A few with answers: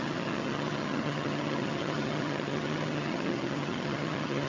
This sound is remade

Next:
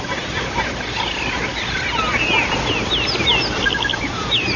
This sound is recorded